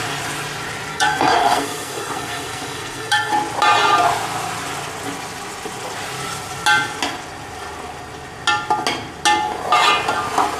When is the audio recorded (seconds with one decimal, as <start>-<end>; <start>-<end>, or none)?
0.0-0.9; 3.3-10.6